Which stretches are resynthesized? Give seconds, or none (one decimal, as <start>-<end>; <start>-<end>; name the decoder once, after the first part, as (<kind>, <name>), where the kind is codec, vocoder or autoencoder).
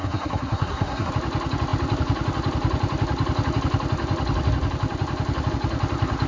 0.0-1.1 (codec, SNAC)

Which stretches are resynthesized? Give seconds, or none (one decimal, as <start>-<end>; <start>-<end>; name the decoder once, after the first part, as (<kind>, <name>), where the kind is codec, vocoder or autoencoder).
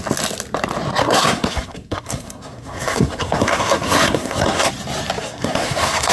1.0-4.7 (codec, SNAC); 5.2-6.1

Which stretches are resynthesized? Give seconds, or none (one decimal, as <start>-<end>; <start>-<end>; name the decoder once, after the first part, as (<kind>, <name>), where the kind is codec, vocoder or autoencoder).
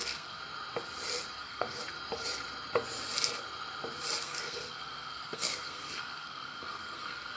0.0-0.4 (codec, SNAC); 1.4-1.8; 4.2-7.4